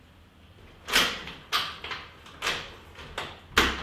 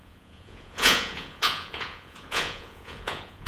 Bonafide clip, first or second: first